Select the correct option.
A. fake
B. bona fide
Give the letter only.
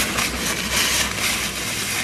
B